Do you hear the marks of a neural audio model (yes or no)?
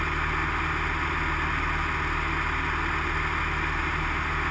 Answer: no